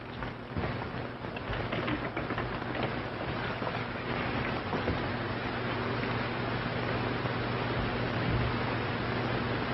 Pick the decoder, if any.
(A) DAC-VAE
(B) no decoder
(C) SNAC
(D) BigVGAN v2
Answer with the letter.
B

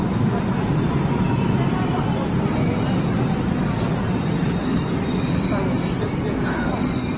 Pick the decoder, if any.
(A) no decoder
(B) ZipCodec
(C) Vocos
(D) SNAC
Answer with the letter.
A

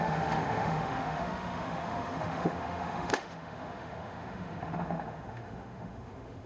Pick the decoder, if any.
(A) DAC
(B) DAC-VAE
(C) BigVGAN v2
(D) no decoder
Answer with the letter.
B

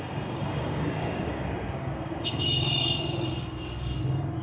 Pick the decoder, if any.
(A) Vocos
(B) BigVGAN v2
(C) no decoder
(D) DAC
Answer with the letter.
D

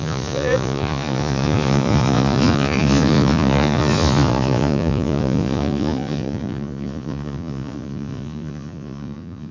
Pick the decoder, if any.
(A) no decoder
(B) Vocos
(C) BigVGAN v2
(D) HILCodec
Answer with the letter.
B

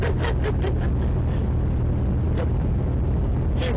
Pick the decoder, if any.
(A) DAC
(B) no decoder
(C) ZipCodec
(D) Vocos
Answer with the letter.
B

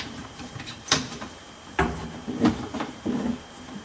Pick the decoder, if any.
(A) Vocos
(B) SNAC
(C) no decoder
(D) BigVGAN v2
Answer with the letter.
D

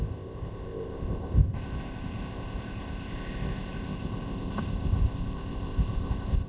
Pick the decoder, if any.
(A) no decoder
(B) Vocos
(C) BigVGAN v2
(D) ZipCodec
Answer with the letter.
D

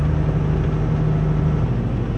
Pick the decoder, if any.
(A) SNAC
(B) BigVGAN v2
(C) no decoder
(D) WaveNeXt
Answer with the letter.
C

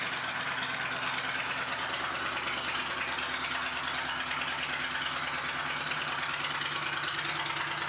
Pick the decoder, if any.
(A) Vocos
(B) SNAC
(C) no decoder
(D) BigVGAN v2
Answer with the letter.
C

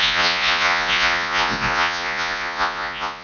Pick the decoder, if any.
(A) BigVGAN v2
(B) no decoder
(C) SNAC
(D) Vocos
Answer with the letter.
D